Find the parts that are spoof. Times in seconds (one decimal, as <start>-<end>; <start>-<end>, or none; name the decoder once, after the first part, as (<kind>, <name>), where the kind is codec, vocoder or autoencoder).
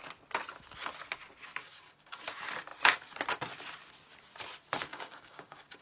1.6-2.2 (codec, DAC); 4.9-5.8